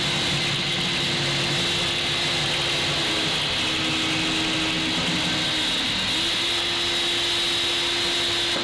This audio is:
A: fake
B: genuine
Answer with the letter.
B